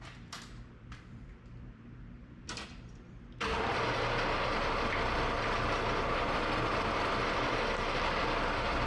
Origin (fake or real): fake